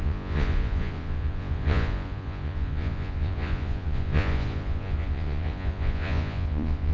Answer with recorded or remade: remade